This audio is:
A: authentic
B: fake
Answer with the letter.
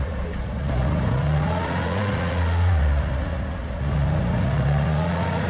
B